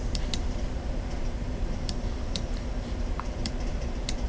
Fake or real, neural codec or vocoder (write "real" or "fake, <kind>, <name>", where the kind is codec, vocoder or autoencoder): fake, vocoder, BigVGAN v2